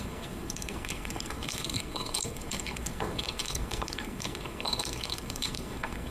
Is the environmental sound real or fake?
fake